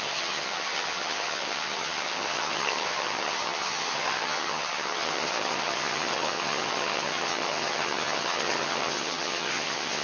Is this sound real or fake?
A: fake